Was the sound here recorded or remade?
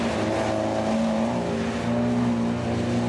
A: recorded